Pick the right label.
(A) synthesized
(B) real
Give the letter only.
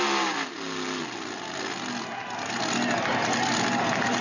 B